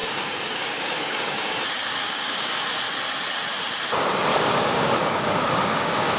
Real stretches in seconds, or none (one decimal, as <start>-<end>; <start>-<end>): 1.4-2.0; 2.6-4.3